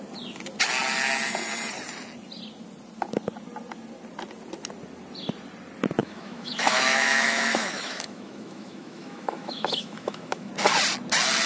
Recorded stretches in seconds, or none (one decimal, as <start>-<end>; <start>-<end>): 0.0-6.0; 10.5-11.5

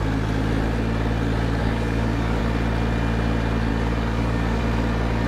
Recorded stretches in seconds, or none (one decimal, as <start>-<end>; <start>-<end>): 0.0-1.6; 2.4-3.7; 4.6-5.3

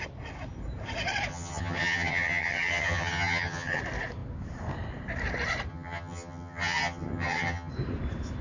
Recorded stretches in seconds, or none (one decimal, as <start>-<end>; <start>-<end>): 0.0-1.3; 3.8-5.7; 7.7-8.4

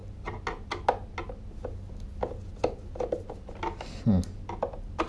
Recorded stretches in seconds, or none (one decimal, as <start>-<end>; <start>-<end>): 0.0-5.1